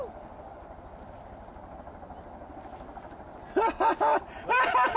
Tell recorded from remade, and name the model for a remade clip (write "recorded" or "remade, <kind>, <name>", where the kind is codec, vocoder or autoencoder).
recorded